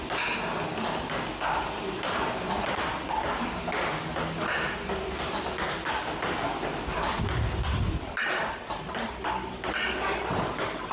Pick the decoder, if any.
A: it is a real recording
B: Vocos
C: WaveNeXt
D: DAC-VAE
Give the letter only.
A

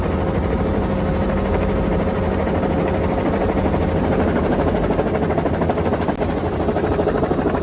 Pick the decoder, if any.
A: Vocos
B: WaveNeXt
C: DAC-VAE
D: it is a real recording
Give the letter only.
D